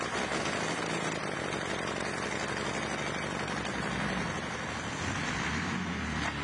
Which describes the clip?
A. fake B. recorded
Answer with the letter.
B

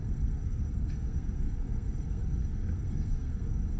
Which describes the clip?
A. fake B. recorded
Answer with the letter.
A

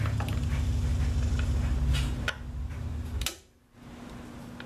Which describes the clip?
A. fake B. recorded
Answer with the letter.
B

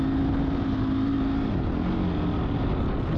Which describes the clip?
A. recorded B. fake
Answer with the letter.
A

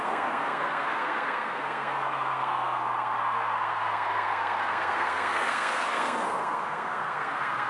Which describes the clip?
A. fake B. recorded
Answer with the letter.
A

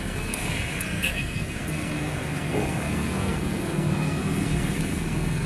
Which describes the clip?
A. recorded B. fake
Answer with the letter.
B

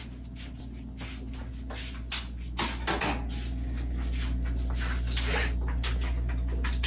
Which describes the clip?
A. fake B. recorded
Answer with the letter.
B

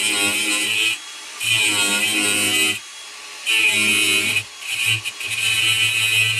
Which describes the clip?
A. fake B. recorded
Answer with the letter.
B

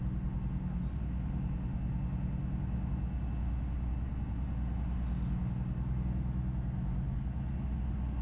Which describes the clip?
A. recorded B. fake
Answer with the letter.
A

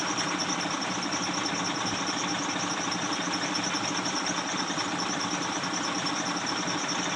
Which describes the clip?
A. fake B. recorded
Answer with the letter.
B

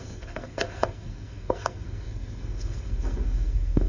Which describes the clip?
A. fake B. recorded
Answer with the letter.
A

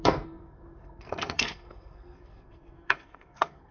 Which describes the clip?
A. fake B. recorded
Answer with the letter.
A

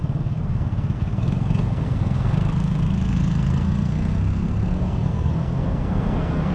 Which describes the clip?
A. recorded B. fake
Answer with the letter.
B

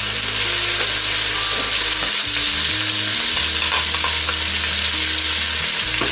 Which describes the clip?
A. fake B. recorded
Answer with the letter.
B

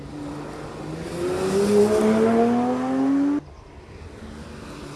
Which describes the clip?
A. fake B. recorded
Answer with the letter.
B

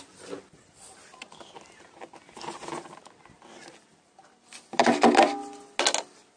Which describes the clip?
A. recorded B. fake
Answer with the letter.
A